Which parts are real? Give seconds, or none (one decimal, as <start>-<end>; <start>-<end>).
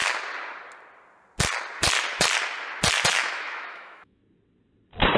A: 0.0-3.1; 4.2-5.2